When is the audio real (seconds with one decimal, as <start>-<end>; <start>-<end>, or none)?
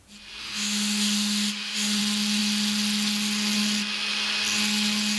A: 0.0-0.4; 2.0-5.2